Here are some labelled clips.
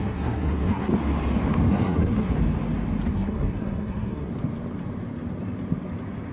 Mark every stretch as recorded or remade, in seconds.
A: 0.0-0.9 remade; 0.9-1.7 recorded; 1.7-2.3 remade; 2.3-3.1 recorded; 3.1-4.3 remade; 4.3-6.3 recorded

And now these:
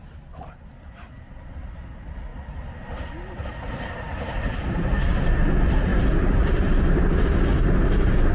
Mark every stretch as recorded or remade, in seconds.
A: 0.0-8.3 recorded

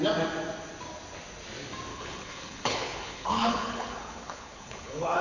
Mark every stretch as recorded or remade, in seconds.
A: 0.0-1.9 recorded; 1.9-5.2 remade

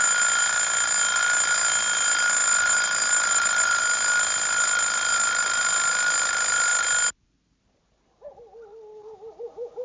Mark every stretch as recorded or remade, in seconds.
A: 0.0-2.4 recorded; 2.4-3.8 remade; 3.8-9.8 recorded

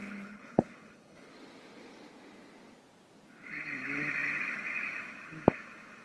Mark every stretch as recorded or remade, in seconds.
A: 0.0-1.3 remade; 1.3-6.0 recorded

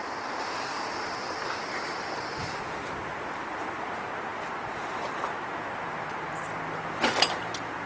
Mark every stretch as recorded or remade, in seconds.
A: 0.0-7.9 recorded